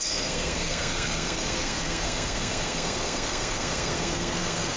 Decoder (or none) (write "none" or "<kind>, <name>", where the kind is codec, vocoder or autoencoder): codec, SNAC